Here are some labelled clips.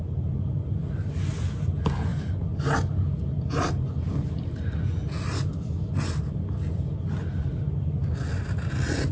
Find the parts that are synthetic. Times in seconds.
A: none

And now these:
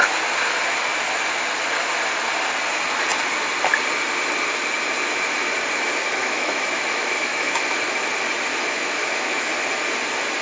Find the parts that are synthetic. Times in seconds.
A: 6.2-7.6 (autoencoder, DAC-VAE); 8.5-9.5

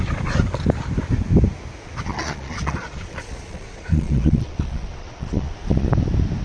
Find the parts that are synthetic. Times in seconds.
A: 2.1-5.9 (vocoder, Vocos)